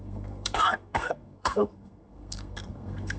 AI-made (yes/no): yes